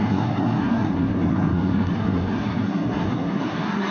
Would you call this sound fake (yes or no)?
yes